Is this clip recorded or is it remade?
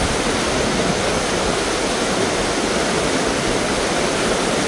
recorded